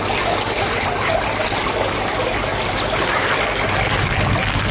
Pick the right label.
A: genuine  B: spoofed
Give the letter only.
A